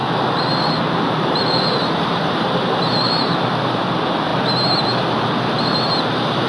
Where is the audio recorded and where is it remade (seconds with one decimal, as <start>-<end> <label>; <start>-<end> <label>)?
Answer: 0.0-3.9 remade; 3.9-6.5 recorded

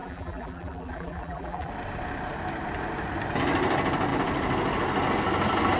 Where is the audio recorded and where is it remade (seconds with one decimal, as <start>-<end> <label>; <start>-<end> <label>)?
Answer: 0.0-1.7 remade; 1.7-5.8 recorded

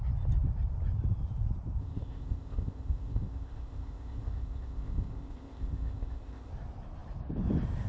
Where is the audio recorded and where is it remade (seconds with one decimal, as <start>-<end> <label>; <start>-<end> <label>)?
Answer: 0.0-1.8 recorded; 1.8-6.5 remade; 6.5-7.9 recorded

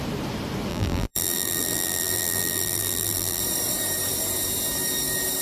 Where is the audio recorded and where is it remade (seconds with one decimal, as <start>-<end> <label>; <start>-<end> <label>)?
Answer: 0.0-0.7 recorded; 0.7-3.4 remade; 3.4-5.4 recorded

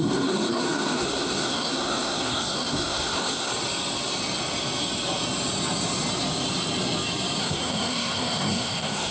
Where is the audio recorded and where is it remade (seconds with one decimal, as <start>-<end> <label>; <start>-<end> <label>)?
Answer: 0.0-3.5 remade; 3.5-7.4 recorded; 7.4-9.1 remade

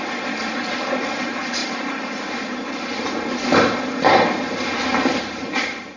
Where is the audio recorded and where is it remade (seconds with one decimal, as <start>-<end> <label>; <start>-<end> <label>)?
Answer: 0.0-1.6 recorded; 1.6-2.3 remade; 2.3-4.9 recorded; 4.9-6.0 remade

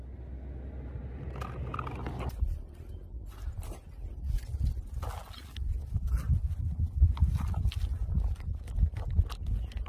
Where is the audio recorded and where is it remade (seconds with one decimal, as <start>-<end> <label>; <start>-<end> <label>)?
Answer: 0.0-9.9 recorded